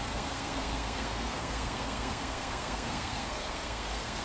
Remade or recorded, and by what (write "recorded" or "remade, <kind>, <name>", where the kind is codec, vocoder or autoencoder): remade, codec, SNAC